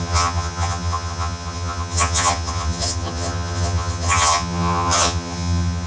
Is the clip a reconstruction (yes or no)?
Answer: yes